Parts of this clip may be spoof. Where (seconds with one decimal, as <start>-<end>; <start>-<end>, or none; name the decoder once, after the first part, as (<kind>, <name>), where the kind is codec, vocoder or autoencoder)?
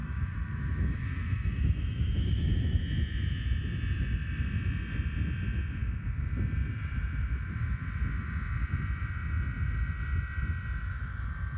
0.0-2.8 (autoencoder, DAC-VAE)